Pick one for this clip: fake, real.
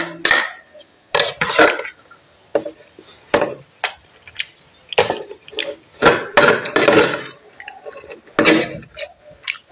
real